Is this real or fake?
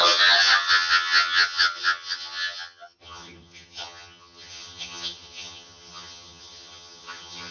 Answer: fake